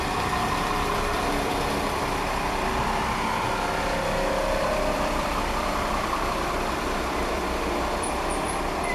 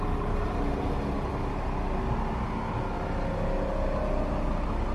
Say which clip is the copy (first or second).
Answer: first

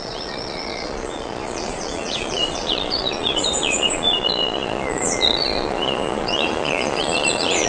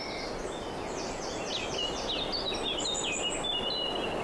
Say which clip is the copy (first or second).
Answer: first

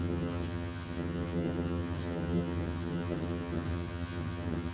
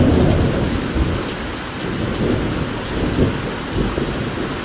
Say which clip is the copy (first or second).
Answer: first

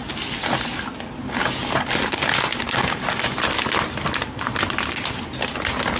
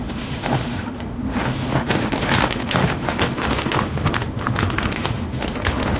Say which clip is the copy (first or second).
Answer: second